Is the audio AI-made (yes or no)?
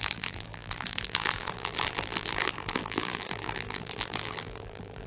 yes